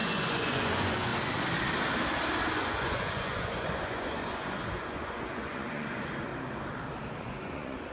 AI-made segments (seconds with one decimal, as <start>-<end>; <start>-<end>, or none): 0.0-1.1; 2.5-6.3; 7.2-7.9